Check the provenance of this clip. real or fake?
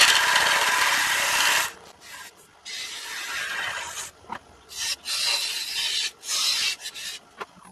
real